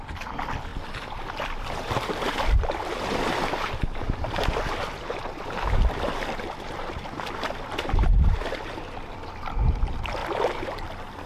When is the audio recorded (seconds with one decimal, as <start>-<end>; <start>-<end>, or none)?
0.0-0.7; 2.8-10.2; 10.9-11.3